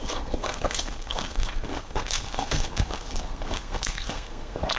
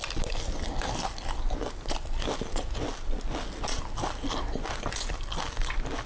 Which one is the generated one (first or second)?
first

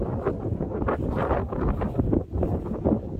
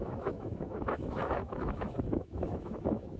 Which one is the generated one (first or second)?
second